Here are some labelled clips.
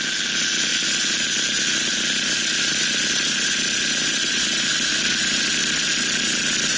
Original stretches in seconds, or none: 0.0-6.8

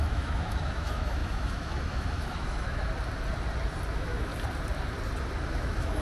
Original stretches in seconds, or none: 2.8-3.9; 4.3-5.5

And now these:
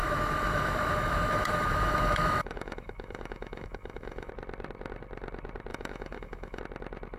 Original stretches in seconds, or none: 4.3-5.7; 6.6-7.2

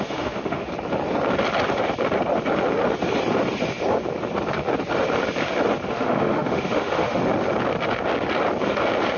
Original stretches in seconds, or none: 0.7-5.9; 7.2-9.2